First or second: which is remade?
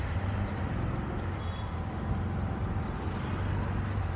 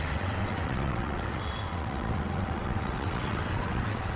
second